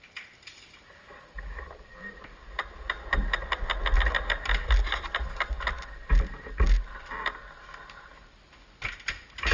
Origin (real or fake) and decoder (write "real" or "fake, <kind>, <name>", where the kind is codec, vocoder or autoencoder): real